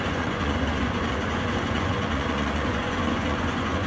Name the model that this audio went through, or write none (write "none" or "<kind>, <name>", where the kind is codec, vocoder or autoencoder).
vocoder, Vocos